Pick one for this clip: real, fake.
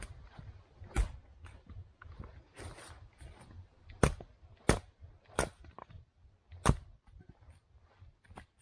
real